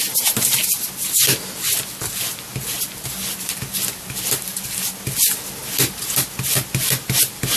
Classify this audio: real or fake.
real